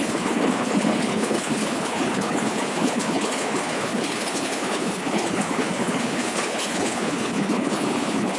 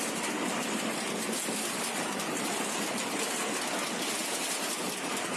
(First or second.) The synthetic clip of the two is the first